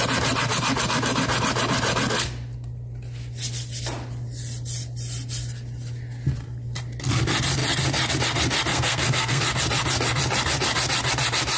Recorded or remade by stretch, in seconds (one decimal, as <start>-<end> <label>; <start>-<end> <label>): 0.0-8.7 recorded; 8.7-9.4 remade; 9.4-11.6 recorded